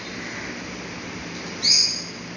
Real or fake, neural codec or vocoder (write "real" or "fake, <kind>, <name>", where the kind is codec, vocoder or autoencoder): real